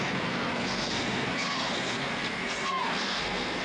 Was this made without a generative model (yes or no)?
no